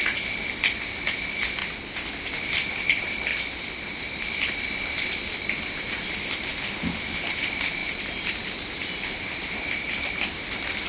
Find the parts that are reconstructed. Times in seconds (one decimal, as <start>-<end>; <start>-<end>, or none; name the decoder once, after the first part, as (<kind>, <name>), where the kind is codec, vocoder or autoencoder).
0.0-1.6 (vocoder, BigVGAN v2); 2.2-3.3; 4.0-6.5; 7.3-10.9